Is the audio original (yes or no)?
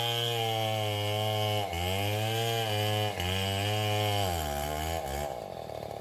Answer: yes